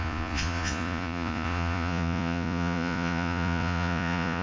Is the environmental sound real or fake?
fake